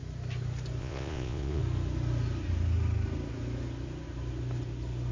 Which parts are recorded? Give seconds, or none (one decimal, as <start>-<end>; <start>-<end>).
0.0-0.8; 1.6-5.1